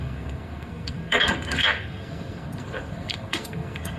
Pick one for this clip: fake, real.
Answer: fake